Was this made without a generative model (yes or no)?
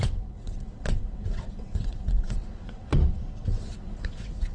no